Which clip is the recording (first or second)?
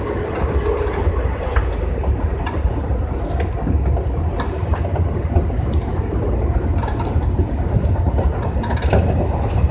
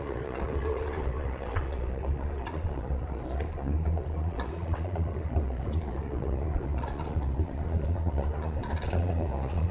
first